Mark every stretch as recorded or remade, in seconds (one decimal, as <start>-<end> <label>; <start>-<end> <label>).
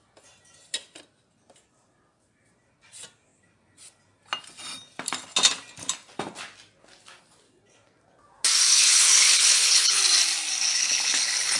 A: 0.0-8.7 recorded; 8.7-10.0 remade; 10.0-10.7 recorded; 10.7-11.6 remade